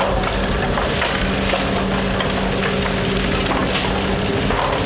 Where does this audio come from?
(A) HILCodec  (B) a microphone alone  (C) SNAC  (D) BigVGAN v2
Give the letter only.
B